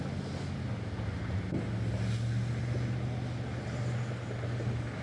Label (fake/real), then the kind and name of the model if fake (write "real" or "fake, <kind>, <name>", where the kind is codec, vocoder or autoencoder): real